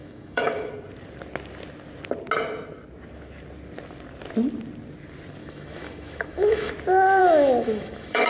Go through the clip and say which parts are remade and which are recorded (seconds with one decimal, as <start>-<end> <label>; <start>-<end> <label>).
0.0-0.7 remade; 0.7-5.4 recorded; 5.4-6.7 remade; 6.7-7.2 recorded; 7.2-8.3 remade

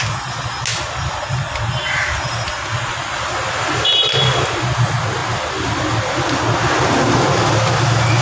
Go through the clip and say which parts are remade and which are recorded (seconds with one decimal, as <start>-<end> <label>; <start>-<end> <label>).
0.0-8.2 recorded

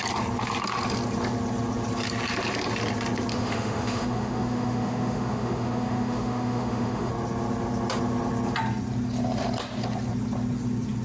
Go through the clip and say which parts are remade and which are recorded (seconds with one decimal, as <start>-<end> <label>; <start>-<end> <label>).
0.0-3.3 recorded; 3.3-7.1 remade; 7.1-11.0 recorded

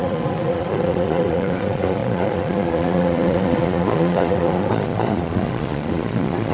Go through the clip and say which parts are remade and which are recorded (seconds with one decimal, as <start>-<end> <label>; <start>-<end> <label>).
0.0-6.5 remade

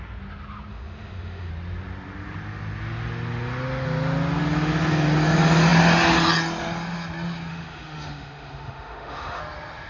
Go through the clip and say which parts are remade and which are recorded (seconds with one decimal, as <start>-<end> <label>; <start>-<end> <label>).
0.0-0.7 recorded; 0.7-1.5 remade; 1.5-7.5 recorded; 7.5-9.4 remade; 9.4-9.9 recorded